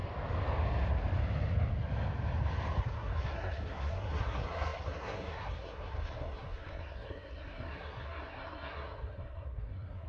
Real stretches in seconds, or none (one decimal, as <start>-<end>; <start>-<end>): 0.0-2.8